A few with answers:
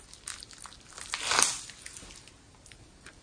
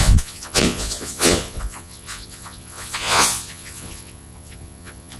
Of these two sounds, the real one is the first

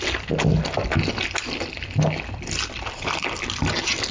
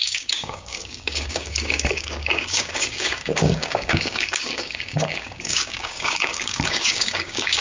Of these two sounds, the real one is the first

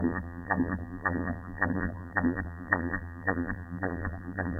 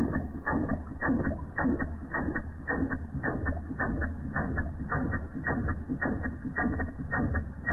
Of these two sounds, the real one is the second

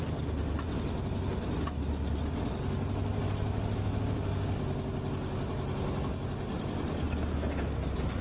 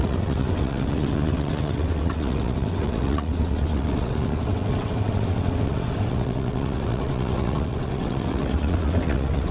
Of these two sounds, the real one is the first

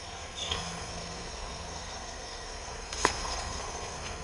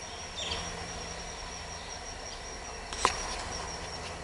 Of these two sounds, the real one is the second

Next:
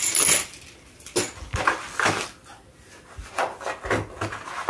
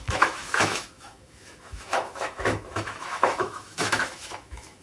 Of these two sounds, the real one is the first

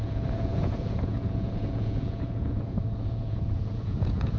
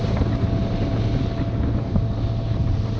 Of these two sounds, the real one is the second